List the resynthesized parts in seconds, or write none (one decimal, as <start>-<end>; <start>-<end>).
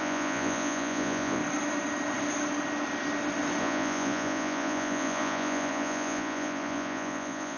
0.0-1.4; 3.6-7.6